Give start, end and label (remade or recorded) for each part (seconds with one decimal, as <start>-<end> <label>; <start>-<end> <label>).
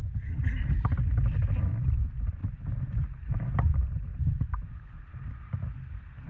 0.0-2.4 recorded; 2.4-3.5 remade; 3.5-6.3 recorded